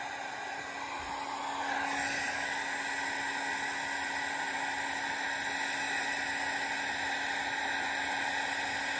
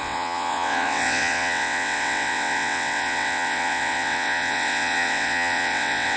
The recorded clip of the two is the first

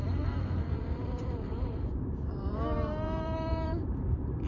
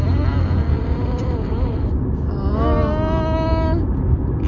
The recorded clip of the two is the second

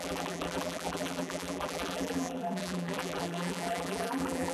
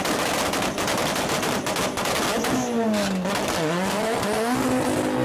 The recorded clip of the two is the second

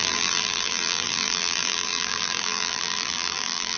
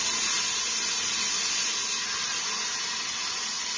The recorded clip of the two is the second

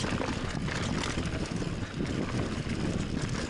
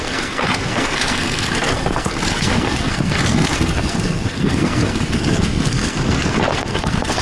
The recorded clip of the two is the first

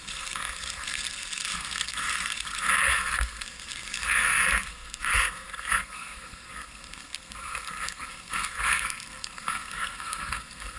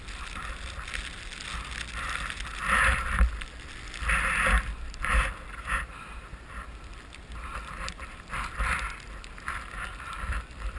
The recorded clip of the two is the second